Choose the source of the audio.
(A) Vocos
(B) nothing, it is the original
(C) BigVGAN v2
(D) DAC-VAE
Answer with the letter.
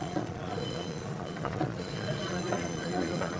A